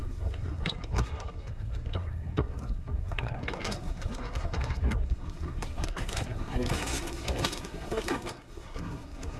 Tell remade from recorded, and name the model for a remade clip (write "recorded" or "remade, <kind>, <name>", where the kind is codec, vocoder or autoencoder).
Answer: remade, codec, SNAC